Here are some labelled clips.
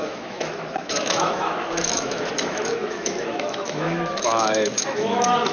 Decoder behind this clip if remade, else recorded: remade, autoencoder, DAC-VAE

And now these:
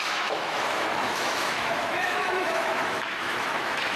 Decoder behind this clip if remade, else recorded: remade, autoencoder, DAC-VAE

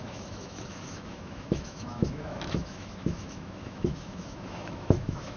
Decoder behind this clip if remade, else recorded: remade, autoencoder, DAC-VAE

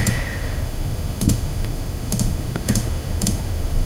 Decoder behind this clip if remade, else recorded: remade, autoencoder, DAC-VAE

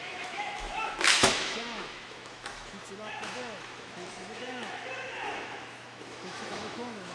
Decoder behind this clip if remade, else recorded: remade, autoencoder, DAC-VAE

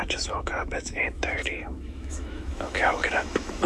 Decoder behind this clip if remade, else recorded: remade, autoencoder, DAC-VAE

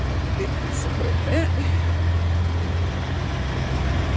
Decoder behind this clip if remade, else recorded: recorded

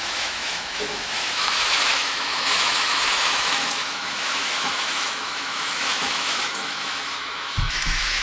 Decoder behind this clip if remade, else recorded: remade, autoencoder, DAC-VAE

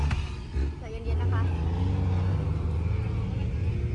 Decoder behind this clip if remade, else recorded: recorded